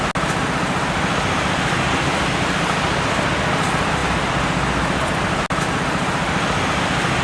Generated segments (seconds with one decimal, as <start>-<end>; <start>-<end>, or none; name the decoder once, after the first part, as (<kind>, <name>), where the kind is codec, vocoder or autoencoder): none